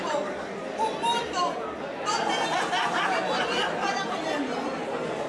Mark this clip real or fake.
fake